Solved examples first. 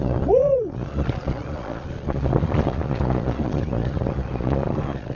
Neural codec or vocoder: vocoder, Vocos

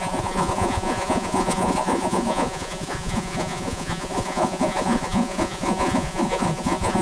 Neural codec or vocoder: vocoder, Vocos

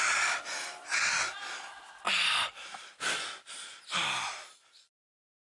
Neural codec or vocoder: none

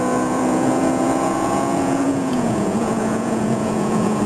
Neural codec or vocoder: vocoder, Vocos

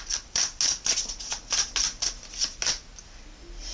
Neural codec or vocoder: none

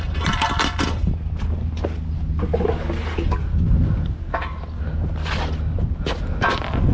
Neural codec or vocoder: none